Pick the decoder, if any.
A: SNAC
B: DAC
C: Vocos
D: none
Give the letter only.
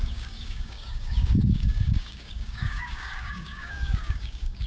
B